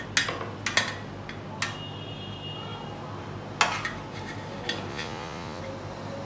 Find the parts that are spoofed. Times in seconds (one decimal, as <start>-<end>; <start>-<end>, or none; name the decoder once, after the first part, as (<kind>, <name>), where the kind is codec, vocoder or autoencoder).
4.9-5.6 (vocoder, Vocos)

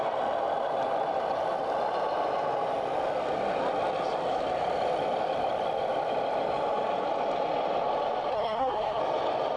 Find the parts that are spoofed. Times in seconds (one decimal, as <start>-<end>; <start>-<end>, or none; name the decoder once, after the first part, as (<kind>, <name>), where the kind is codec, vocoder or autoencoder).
8.3-9.0 (codec, SNAC)

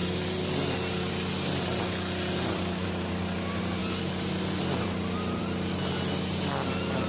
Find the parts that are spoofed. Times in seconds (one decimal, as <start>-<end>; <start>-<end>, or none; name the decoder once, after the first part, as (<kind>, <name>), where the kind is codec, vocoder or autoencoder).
none

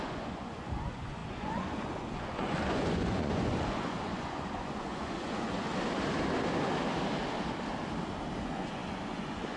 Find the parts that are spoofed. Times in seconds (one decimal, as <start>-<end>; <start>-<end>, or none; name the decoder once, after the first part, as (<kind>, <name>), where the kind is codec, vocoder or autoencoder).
0.0-5.7 (vocoder, Vocos); 8.4-9.6

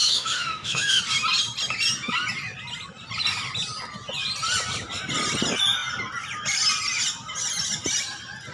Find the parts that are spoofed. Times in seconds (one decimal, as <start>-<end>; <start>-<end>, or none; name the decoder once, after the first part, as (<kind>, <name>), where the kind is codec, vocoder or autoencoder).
0.0-1.0 (autoencoder, DAC-VAE)

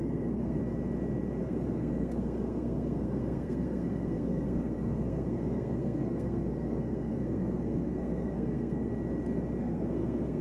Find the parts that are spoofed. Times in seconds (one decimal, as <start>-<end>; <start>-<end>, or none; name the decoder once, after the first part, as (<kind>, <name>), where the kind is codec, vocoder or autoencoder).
0.0-0.6 (codec, SNAC); 1.4-8.9; 9.6-10.4